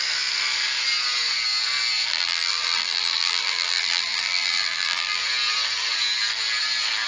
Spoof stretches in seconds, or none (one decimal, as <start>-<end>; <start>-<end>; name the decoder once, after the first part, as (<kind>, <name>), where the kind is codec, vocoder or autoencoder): 2.1-5.2 (vocoder, BigVGAN v2)